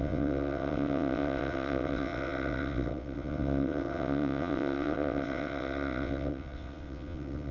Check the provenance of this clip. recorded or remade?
remade